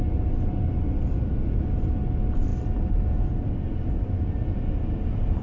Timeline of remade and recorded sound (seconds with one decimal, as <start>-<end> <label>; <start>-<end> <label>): 0.0-5.4 recorded